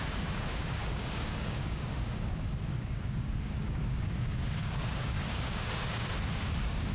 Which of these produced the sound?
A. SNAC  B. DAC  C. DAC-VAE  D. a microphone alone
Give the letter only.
B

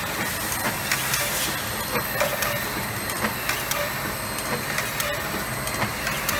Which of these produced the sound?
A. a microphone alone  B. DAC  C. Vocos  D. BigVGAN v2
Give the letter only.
A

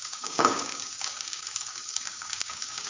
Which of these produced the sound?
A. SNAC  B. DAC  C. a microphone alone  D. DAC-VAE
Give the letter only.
B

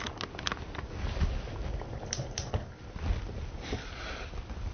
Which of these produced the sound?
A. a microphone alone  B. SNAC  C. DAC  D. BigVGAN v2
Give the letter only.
A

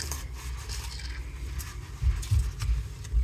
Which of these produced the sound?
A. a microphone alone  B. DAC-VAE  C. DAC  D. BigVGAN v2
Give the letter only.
A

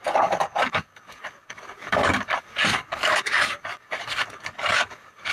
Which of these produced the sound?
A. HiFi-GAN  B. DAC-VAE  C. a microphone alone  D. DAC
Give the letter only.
D